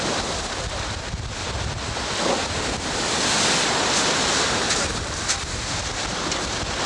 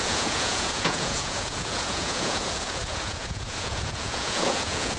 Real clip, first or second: first